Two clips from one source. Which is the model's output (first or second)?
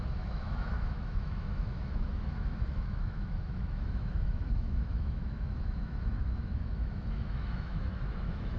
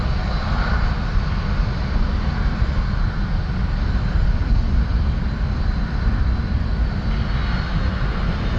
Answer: first